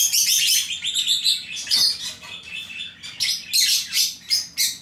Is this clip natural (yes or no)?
yes